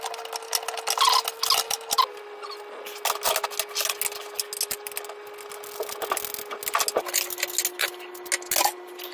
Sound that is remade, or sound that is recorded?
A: recorded